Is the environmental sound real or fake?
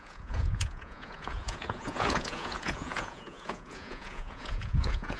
fake